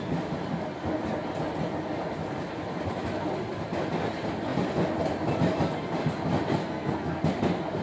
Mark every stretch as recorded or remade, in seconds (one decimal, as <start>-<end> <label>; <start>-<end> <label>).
0.0-6.6 recorded; 6.6-7.2 remade; 7.2-7.8 recorded